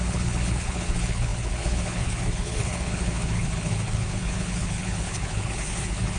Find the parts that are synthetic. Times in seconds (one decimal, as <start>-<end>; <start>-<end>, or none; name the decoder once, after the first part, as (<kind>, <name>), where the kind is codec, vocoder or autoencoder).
0.0-6.2 (codec, HILCodec)